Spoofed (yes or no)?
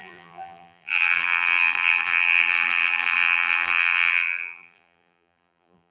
yes